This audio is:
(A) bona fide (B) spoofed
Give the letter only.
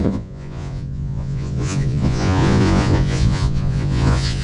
B